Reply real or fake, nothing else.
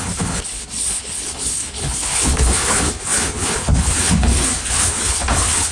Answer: fake